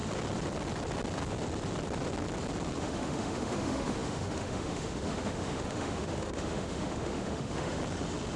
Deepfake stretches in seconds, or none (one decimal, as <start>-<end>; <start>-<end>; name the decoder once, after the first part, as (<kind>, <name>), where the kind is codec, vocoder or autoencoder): 2.8-7.8 (autoencoder, DAC-VAE)